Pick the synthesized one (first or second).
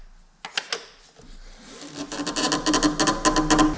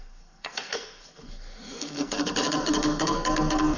second